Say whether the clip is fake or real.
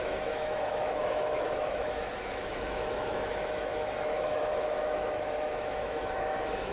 fake